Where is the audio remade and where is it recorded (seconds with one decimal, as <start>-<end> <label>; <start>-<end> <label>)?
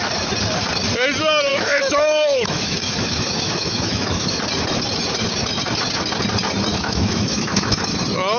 0.0-1.5 recorded; 1.5-4.4 remade; 4.4-6.7 recorded; 6.7-7.9 remade; 7.9-8.4 recorded